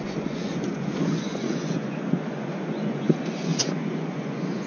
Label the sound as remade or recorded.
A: remade